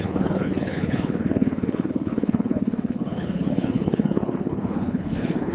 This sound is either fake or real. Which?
fake